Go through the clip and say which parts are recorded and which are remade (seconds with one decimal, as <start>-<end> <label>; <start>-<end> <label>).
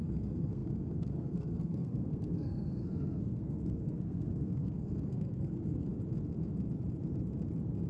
0.0-5.9 remade; 5.9-7.9 recorded